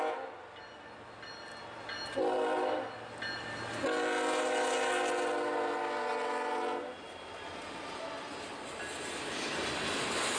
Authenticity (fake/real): real